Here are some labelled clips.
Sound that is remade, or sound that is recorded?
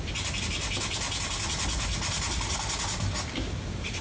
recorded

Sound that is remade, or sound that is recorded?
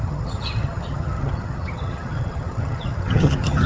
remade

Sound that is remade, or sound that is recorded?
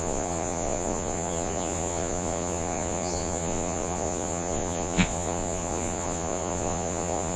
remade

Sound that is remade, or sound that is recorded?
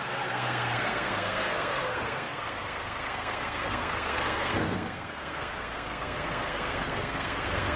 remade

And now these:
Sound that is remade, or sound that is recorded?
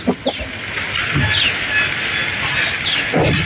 recorded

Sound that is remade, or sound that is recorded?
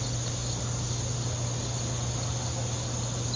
recorded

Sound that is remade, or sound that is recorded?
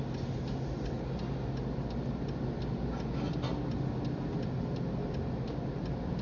recorded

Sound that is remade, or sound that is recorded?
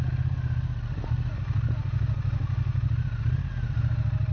recorded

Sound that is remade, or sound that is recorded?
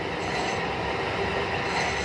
recorded